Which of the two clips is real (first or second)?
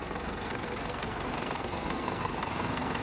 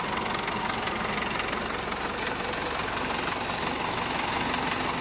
second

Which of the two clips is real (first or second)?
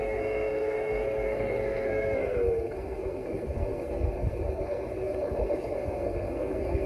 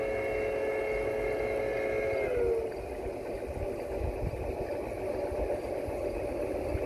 second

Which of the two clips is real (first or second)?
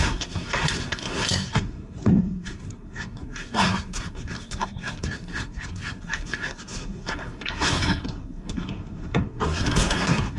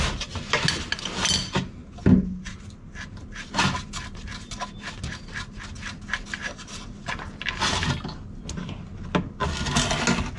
second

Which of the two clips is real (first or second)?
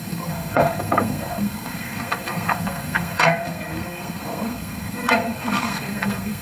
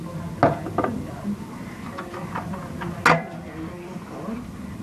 second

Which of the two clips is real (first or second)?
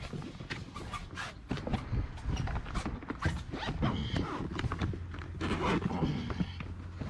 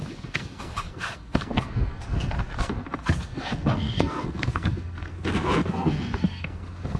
first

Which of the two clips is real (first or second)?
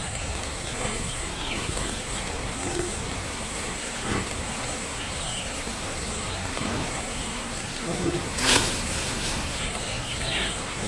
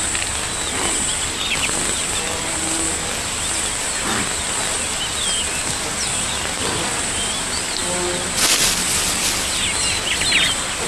second